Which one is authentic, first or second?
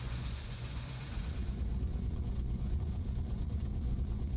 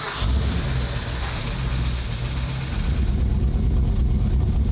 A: second